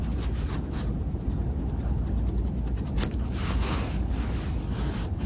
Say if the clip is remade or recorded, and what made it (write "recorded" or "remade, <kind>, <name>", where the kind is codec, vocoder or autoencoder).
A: recorded